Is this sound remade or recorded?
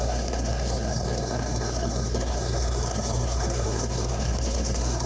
remade